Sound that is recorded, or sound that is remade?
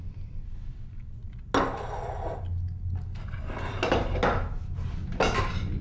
recorded